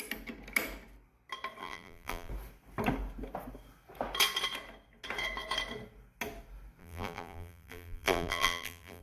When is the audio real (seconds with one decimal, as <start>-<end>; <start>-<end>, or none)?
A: 0.0-1.6; 2.3-6.8